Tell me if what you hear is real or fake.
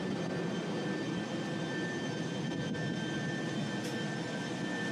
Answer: real